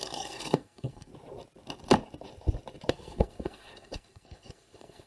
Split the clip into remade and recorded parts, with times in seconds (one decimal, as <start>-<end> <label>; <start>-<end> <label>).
0.0-1.1 remade; 1.1-2.9 recorded; 2.9-5.1 remade